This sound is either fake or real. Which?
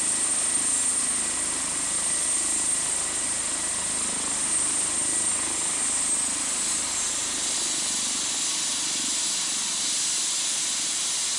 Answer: real